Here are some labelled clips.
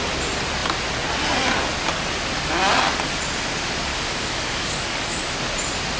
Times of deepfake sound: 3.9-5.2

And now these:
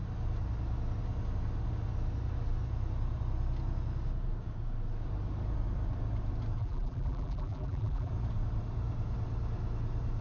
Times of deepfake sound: 6.6-8.1

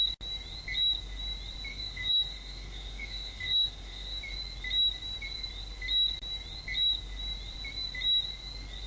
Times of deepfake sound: 1.7-4.2